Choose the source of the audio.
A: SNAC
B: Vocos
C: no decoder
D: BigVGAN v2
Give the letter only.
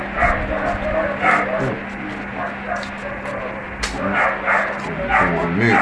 C